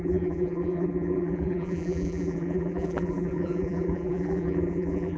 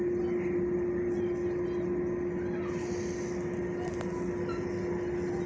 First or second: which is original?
second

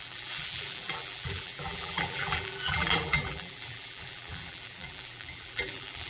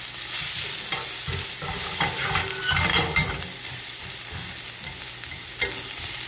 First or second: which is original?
second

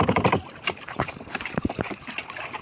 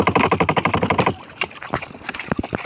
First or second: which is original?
second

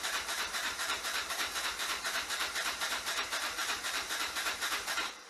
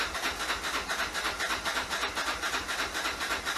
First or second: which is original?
second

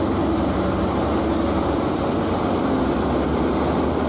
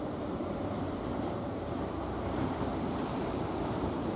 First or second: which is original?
first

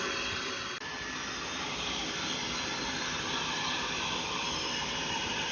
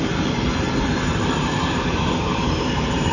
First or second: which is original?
first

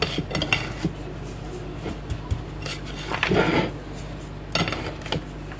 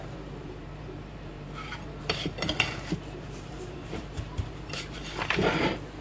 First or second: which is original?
first